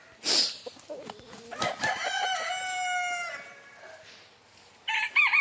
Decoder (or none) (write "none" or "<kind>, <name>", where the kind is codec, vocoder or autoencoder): none